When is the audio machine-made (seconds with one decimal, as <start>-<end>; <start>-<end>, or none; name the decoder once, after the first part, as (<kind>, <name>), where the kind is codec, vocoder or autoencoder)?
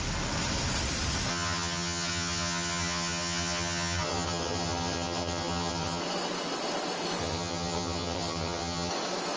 1.3-6.0 (vocoder, HiFi-GAN); 7.2-8.9